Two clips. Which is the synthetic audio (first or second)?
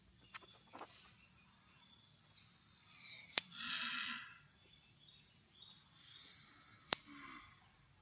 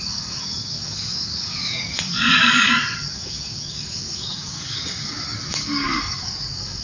second